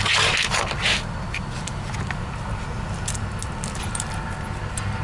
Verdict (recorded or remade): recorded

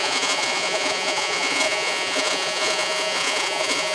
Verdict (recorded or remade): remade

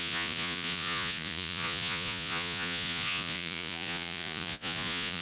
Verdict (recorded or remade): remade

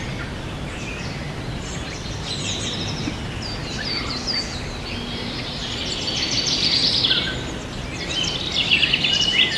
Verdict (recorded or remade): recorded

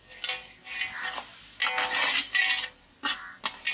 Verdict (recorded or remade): recorded